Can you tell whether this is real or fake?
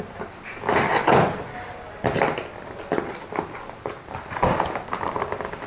real